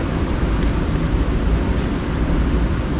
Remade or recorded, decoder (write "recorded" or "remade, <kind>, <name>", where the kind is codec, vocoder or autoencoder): remade, vocoder, BigVGAN v2